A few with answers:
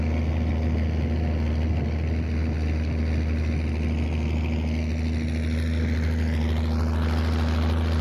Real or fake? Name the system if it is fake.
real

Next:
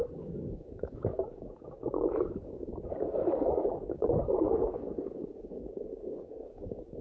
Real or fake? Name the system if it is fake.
fake, codec, DAC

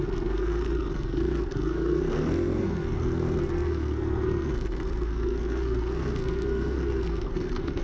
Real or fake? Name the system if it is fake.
fake, codec, SNAC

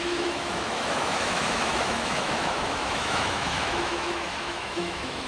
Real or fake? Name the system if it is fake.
fake, autoencoder, DAC-VAE